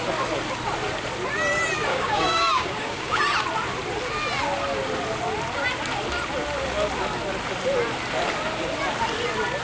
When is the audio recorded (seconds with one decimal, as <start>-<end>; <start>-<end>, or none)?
0.0-1.9; 3.2-9.6